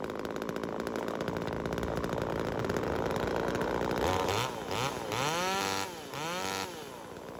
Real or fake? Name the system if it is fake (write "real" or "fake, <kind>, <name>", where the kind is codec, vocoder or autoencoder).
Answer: real